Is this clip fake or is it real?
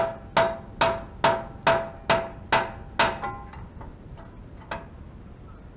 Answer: real